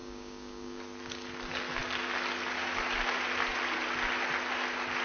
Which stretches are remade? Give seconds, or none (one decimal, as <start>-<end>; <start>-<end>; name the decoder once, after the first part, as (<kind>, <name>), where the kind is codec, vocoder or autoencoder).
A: 0.0-0.8 (codec, DAC)